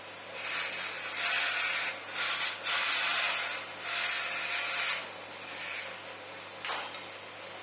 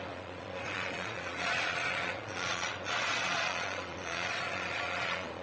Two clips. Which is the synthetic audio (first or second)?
second